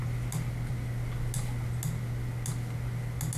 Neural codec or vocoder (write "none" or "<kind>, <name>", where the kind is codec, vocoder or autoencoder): none